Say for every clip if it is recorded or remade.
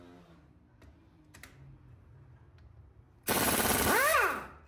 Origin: remade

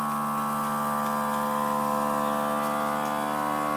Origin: recorded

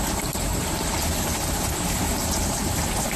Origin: remade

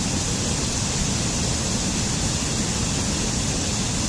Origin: recorded